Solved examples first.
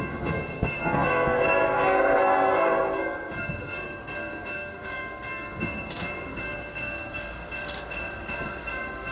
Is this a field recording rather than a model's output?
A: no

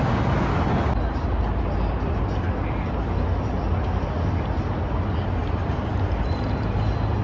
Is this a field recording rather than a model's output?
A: yes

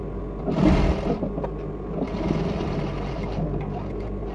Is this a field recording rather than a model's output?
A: yes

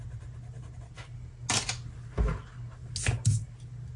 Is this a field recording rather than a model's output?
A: yes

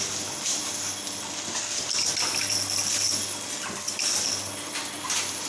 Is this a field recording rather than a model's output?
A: yes